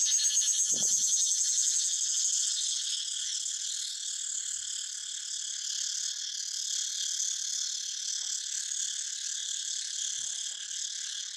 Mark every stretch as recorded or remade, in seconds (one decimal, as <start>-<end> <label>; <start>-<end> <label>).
0.0-9.4 recorded; 9.4-10.0 remade; 10.0-11.4 recorded